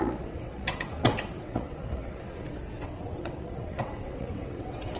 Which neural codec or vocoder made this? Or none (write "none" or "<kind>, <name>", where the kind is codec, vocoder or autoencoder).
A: vocoder, WaveNeXt